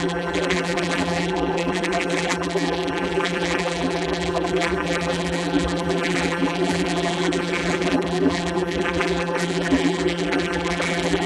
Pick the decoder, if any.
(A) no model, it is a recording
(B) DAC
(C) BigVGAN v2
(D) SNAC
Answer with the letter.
C